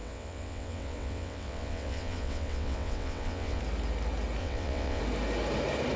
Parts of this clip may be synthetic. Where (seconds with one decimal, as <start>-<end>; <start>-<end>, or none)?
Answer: 0.0-3.6; 4.4-5.0